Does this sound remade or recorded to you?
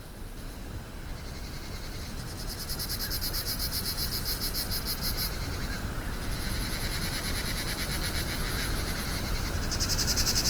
recorded